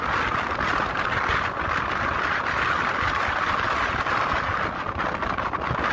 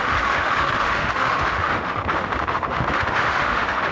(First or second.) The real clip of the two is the first